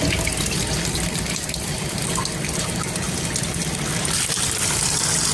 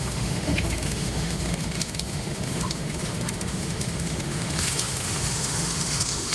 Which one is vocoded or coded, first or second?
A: second